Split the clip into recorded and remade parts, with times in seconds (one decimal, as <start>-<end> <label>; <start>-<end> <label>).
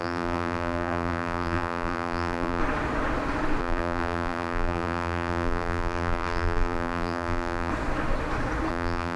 0.0-2.6 remade; 2.6-3.6 recorded; 3.6-7.7 remade; 7.7-8.7 recorded; 8.7-9.2 remade